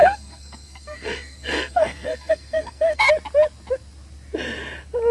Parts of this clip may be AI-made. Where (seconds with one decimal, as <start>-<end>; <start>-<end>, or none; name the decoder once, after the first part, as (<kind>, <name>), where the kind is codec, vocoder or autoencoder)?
0.0-3.1 (codec, SNAC)